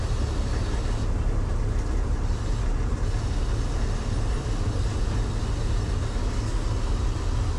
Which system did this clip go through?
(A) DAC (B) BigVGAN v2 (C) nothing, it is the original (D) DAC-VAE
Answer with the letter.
C